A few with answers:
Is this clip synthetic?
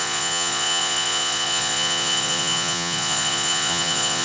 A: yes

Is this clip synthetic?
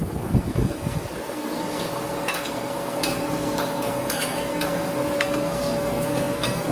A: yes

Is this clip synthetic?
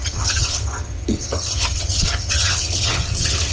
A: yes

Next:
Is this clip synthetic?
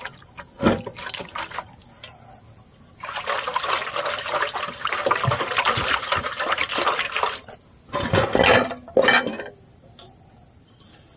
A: no